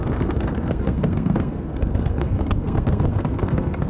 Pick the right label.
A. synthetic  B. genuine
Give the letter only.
A